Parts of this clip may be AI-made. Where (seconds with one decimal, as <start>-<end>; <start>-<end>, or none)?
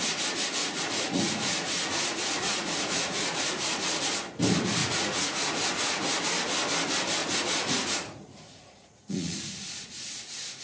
0.6-4.0; 4.8-6.1; 7.2-10.6